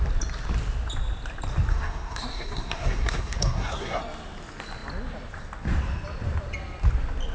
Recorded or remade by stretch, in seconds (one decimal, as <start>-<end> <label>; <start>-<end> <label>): 0.0-1.7 recorded; 1.7-4.0 remade; 4.0-7.3 recorded